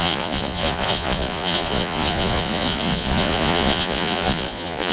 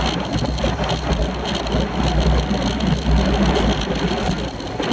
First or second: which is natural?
second